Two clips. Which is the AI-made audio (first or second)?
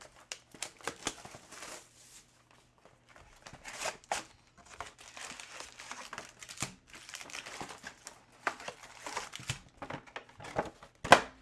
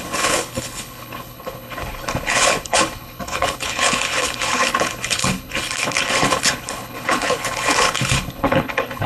second